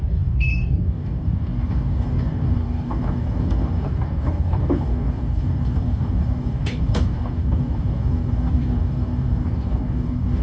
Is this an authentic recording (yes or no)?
no